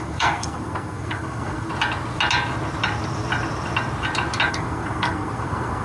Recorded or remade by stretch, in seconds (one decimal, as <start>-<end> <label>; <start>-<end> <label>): 0.0-1.7 remade; 1.7-4.5 recorded; 4.5-5.8 remade